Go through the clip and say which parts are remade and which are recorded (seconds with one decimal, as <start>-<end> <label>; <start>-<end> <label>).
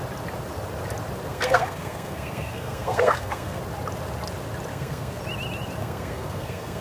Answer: 0.0-1.3 recorded; 1.3-3.6 remade; 3.6-4.7 recorded; 4.7-5.2 remade; 5.2-5.8 recorded; 5.8-6.8 remade